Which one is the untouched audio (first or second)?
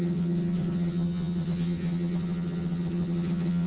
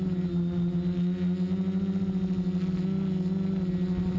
second